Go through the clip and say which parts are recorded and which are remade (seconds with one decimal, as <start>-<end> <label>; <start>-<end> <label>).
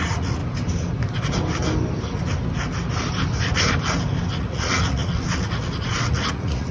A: 0.0-0.4 remade; 0.4-4.4 recorded; 4.4-6.7 remade